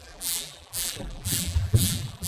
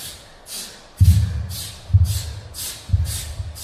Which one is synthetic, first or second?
first